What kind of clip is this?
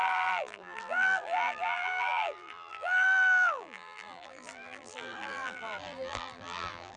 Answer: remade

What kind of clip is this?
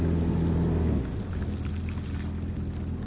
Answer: recorded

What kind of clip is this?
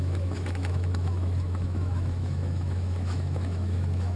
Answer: remade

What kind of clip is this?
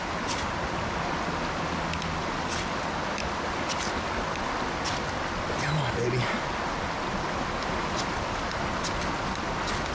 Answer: recorded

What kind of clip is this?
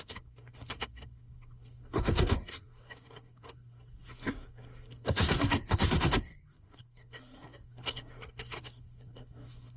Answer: remade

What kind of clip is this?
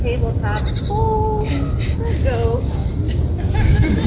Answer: recorded